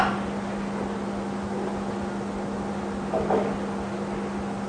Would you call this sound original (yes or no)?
yes